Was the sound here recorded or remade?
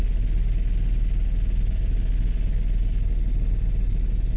recorded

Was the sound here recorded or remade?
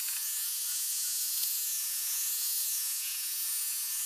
remade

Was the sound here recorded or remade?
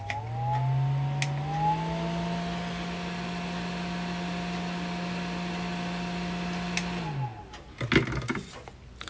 recorded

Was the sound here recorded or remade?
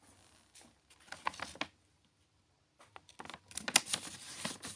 recorded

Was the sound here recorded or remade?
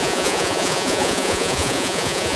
remade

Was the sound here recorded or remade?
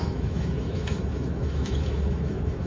remade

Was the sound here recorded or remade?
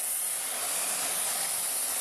recorded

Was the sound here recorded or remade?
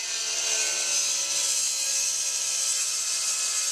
recorded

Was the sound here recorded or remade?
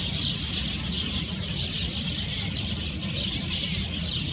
recorded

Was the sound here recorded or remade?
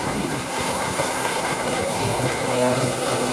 remade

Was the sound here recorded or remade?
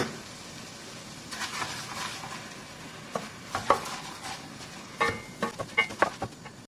recorded